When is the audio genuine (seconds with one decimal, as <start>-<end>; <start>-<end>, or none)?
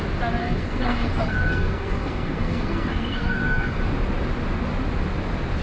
0.0-0.4; 3.8-5.6